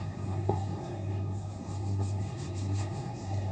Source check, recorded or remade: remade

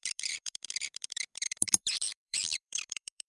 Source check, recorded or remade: remade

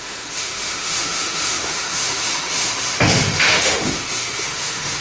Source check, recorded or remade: remade